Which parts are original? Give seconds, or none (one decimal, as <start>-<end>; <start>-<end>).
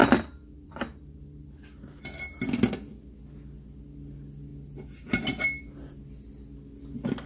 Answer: 0.7-7.3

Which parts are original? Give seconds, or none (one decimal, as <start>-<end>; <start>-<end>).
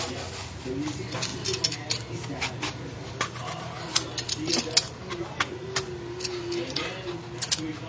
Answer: 0.0-7.9